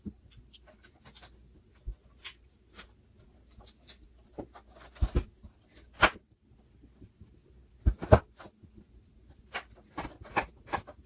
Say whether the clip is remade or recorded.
recorded